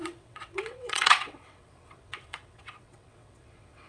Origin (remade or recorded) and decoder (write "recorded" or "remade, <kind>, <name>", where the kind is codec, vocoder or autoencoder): remade, vocoder, WaveNeXt